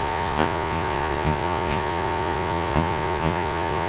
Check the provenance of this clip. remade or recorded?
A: remade